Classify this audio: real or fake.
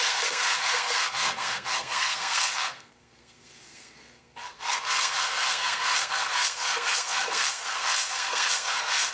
fake